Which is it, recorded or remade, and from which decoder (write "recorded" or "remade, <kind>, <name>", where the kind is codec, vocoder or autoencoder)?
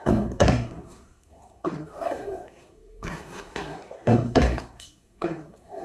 remade, codec, SNAC